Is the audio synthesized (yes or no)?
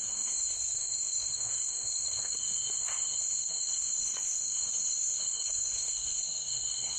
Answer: yes